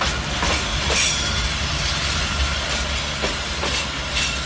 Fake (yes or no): no